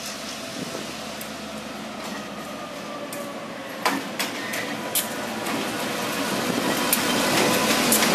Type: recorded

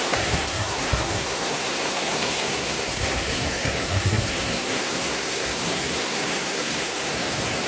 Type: remade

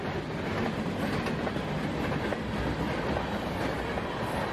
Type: recorded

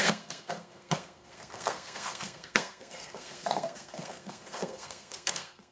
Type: remade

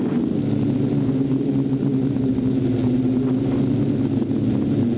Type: recorded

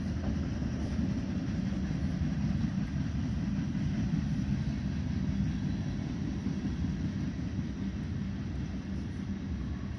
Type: recorded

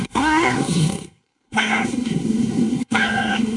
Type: remade